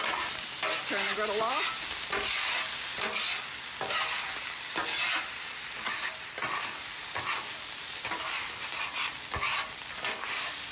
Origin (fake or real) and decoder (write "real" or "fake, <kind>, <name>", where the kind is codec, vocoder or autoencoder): real